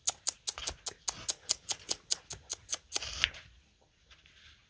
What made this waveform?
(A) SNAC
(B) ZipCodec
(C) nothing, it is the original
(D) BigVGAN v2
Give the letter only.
C